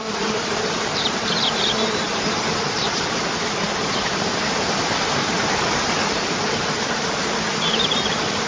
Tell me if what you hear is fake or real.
fake